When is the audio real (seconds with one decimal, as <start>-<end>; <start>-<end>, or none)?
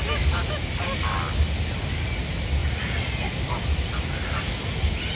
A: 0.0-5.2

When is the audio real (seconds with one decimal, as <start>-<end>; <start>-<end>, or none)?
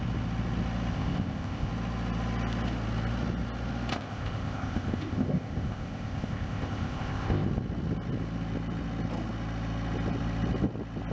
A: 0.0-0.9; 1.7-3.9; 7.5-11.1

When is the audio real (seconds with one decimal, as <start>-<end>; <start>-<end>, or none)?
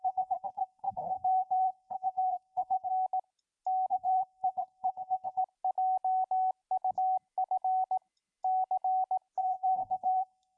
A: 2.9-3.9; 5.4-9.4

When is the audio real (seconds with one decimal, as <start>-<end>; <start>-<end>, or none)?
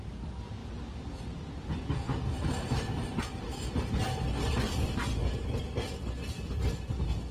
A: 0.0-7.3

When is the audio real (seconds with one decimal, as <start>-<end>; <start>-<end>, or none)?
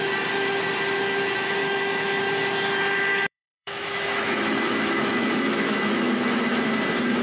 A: 0.0-1.6; 2.2-3.1; 6.6-7.2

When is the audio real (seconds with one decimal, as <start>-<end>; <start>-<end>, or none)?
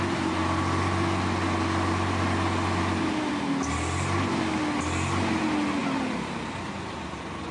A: 0.0-5.8; 6.3-7.5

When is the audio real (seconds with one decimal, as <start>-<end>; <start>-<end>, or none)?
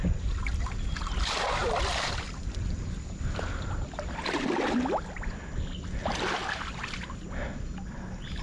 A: 0.8-1.6; 3.5-6.0; 7.1-8.4